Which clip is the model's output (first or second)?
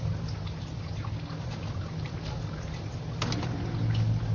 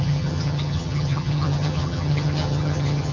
second